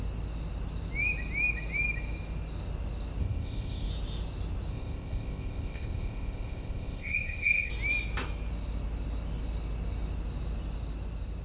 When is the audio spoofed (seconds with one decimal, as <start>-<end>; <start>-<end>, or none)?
3.2-3.9; 4.7-7.7